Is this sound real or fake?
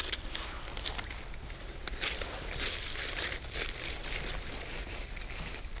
real